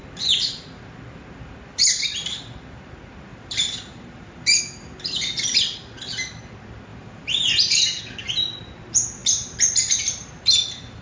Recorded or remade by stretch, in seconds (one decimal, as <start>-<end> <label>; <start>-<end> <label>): 0.0-3.3 recorded; 3.3-4.6 remade; 4.6-6.9 recorded; 6.9-8.0 remade; 8.0-9.2 recorded; 9.2-11.0 remade